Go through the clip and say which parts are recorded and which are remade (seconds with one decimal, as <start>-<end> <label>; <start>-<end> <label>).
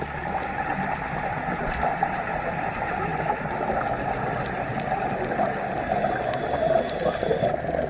0.0-7.9 recorded